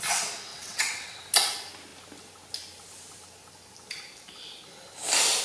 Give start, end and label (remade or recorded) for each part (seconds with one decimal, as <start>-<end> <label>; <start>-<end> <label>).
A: 0.0-0.5 recorded; 0.5-1.2 remade; 1.2-5.4 recorded